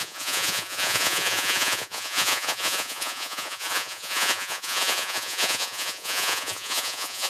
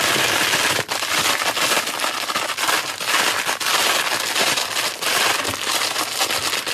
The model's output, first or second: first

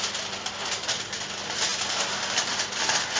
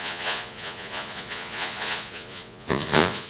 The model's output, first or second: second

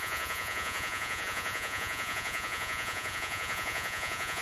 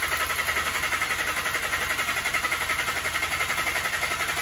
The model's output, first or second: first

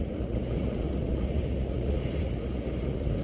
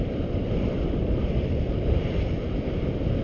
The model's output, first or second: first